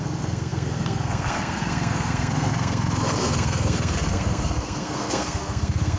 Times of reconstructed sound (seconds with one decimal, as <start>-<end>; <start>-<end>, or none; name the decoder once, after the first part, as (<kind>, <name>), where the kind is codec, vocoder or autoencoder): 0.0-6.0 (codec, SNAC)

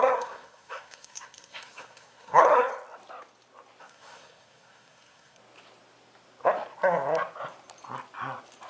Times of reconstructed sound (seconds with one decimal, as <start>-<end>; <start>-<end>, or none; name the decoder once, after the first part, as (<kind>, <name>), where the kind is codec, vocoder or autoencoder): 0.0-2.7 (codec, SNAC); 3.8-5.4

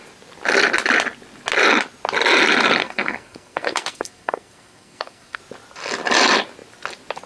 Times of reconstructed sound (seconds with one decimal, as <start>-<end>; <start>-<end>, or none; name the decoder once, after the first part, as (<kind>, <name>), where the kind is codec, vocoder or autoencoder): 2.8-5.4 (codec, SNAC)

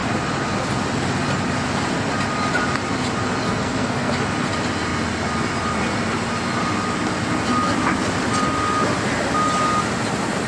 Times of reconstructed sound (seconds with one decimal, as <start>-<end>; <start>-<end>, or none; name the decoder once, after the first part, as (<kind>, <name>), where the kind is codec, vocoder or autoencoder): 3.4-4.1 (codec, SNAC)